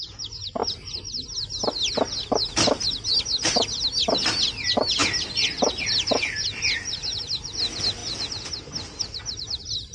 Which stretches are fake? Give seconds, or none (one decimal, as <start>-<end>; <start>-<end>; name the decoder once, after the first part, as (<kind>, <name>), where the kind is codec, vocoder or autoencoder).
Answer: none